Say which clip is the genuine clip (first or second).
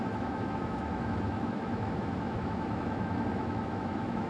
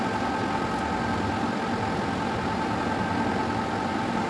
second